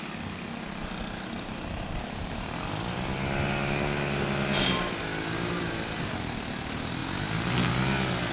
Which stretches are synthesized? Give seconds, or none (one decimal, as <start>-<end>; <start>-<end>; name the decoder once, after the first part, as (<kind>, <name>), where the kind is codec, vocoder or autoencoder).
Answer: none